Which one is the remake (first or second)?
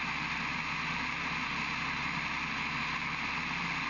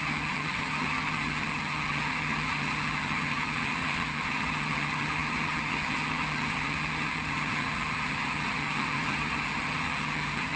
second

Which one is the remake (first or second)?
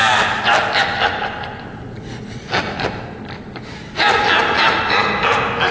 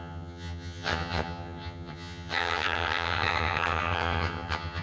second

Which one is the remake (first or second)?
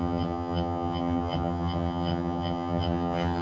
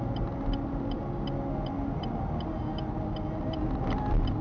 first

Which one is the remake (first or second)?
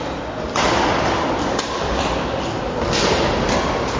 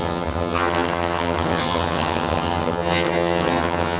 second